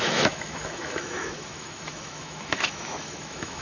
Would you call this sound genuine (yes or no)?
no